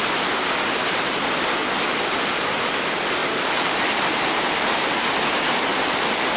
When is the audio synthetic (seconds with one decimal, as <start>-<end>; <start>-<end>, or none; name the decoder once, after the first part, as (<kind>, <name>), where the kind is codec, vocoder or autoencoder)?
1.6-2.7 (vocoder, BigVGAN v2); 3.2-5.1; 5.7-6.4